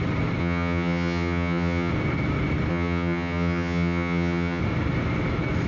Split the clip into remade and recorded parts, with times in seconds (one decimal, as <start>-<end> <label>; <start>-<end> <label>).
0.0-0.4 recorded; 0.4-1.9 remade; 1.9-2.7 recorded; 2.7-4.6 remade; 4.6-5.7 recorded